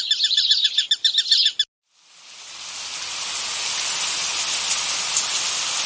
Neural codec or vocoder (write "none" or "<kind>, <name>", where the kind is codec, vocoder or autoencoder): none